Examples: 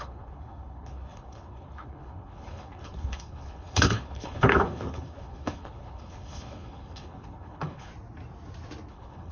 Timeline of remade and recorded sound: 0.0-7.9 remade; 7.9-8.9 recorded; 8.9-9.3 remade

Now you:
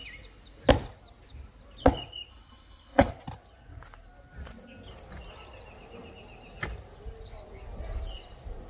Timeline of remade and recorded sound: 0.0-2.3 recorded; 2.3-3.1 remade; 3.1-8.7 recorded

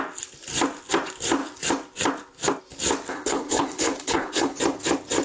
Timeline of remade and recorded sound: 0.0-3.1 recorded; 3.1-4.6 remade; 4.6-5.2 recorded

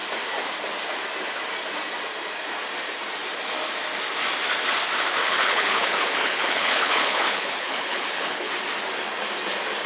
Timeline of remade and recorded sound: 0.0-5.2 recorded; 5.2-8.5 remade; 8.5-9.9 recorded

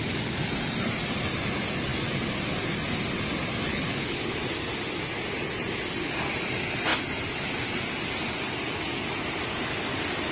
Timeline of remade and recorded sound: 0.0-3.7 recorded; 3.7-4.4 remade; 4.4-10.3 recorded

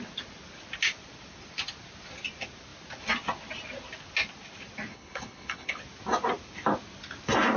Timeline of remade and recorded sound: 0.0-4.9 recorded; 4.9-5.8 remade; 5.8-7.6 recorded

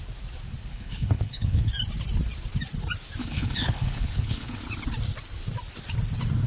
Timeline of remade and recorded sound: 0.0-0.7 recorded; 0.7-1.7 remade; 1.7-3.2 recorded; 3.2-4.6 remade; 4.6-6.5 recorded